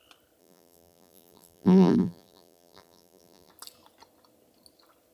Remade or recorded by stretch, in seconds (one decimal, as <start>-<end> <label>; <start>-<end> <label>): 0.0-0.4 recorded; 0.4-3.5 remade; 3.5-5.1 recorded